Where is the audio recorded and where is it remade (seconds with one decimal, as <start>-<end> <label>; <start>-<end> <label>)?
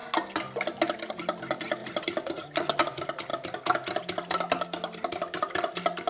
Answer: 0.0-6.1 recorded